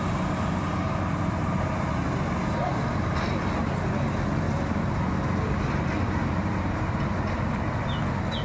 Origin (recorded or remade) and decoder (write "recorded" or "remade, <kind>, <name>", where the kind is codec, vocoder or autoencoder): recorded